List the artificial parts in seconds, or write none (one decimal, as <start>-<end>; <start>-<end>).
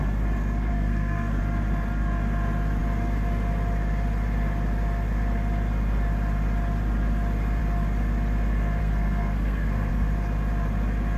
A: 0.7-1.4; 8.8-9.9